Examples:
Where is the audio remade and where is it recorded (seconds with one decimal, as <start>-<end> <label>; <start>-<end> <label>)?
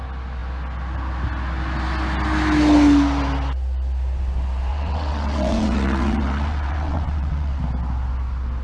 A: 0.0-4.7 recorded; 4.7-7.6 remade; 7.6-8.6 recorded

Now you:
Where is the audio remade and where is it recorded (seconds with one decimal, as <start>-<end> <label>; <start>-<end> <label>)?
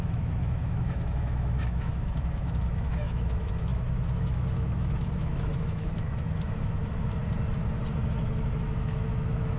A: 0.0-7.2 remade; 7.2-8.2 recorded; 8.2-9.6 remade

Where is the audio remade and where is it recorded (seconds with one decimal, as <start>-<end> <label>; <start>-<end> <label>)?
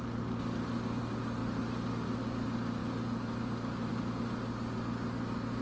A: 0.0-5.6 recorded